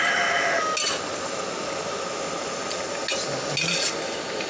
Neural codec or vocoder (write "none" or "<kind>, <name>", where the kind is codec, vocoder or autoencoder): none